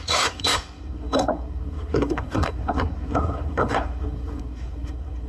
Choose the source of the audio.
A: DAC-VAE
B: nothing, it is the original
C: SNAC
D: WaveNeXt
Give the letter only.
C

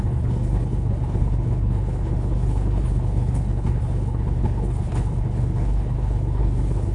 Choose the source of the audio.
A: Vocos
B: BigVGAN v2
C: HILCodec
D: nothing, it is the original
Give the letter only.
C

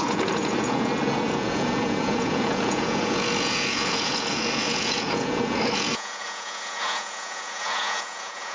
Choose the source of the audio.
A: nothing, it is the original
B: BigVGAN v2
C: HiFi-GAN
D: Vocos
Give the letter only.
D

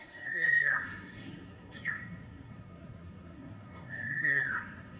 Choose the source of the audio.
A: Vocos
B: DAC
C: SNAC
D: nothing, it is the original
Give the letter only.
C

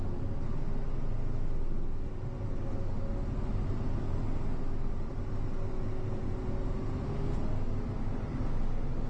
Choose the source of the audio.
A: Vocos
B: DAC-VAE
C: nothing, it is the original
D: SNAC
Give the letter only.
C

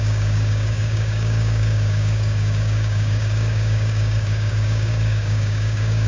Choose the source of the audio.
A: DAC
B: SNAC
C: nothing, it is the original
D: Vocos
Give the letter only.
A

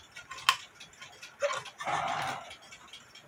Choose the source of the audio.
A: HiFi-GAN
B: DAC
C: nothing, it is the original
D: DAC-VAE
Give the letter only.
C